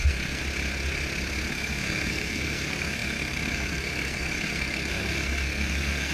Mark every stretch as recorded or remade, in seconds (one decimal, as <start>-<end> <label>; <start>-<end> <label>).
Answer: 0.0-0.4 remade; 0.4-1.5 recorded; 1.5-6.1 remade